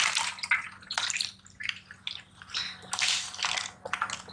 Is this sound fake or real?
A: real